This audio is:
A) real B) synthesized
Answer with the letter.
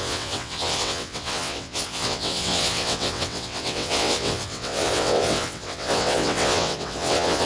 B